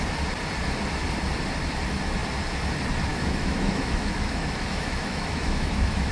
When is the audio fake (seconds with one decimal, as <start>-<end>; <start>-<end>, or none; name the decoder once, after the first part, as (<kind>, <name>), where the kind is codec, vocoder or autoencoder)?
3.1-6.1 (autoencoder, DAC-VAE)